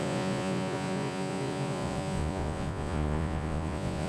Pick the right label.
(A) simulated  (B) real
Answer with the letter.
A